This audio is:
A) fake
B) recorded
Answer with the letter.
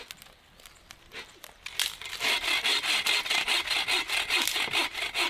B